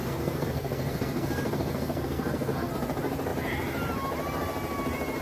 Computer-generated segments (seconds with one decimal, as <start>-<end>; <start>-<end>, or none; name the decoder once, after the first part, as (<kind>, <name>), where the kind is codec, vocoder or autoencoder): 0.0-2.7 (codec, SNAC)